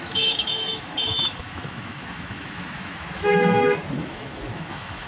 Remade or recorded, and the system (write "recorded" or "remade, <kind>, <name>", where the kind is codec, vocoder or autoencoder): remade, autoencoder, DAC-VAE